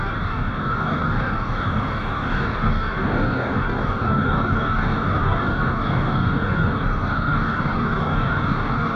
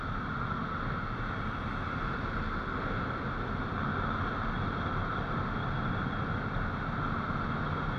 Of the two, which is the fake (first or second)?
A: first